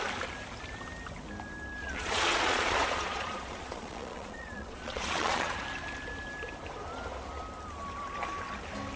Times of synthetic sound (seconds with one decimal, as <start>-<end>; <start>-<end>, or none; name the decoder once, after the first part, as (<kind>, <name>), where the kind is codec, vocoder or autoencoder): 1.8-5.6 (vocoder, Vocos)